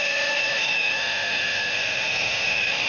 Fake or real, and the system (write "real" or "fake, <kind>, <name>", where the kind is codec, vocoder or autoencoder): fake, autoencoder, DAC-VAE